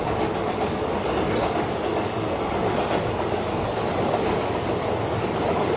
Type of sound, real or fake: fake